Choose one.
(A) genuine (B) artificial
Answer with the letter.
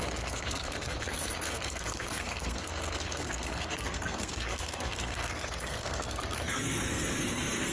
B